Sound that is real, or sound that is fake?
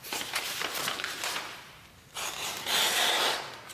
fake